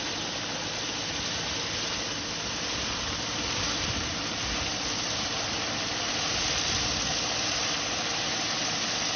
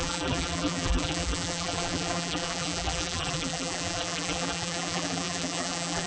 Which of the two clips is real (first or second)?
first